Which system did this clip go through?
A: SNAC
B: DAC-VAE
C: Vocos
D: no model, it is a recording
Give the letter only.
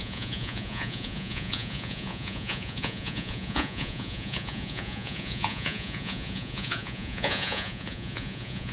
C